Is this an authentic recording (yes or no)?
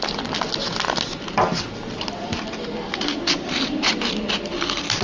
yes